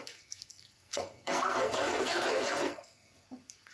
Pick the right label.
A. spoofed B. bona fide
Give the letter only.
A